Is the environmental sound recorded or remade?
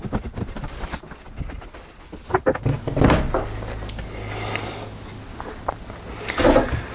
recorded